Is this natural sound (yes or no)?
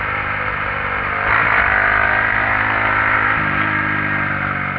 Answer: yes